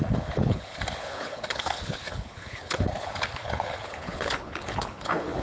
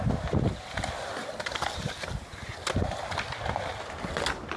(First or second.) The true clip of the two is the second